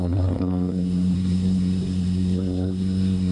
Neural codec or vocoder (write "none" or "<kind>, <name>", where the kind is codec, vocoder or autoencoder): codec, SNAC